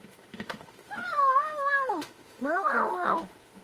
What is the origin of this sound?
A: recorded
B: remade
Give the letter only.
B